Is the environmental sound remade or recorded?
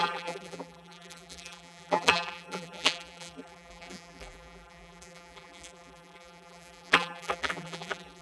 remade